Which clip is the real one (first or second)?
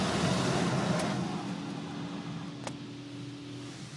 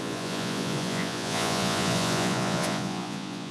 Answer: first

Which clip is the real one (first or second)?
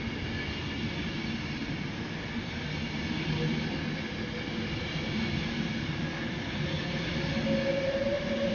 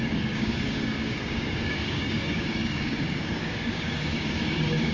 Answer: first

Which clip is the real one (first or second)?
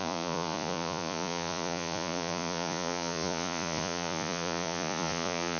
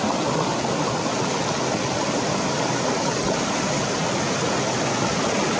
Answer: second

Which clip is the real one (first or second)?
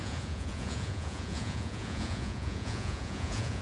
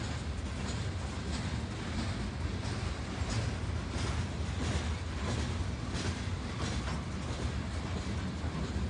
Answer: second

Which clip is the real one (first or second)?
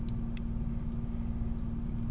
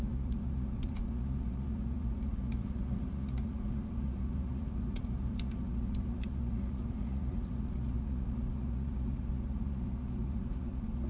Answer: first